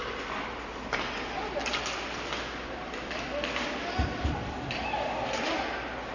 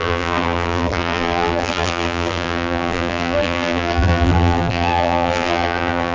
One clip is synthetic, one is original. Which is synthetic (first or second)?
second